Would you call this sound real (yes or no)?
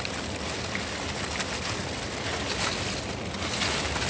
yes